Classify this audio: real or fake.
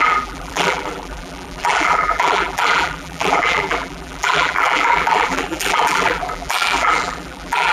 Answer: fake